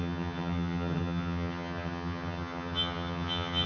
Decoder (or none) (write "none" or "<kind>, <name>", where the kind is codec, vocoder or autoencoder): vocoder, HiFi-GAN